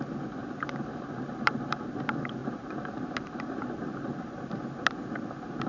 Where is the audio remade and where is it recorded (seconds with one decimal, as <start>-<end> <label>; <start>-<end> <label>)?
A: 0.0-0.4 recorded; 0.4-2.0 remade; 2.0-2.4 recorded; 2.4-4.7 remade; 4.7-5.7 recorded